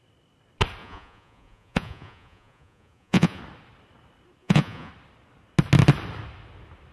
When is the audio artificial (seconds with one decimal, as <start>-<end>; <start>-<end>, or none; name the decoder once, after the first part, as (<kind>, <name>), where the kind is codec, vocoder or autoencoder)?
0.8-3.4 (vocoder, Vocos); 4.4-4.9